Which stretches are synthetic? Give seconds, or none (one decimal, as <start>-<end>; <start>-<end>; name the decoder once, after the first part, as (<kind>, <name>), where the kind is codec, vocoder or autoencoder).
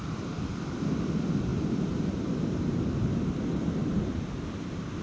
1.5-3.2 (vocoder, BigVGAN v2); 3.8-4.3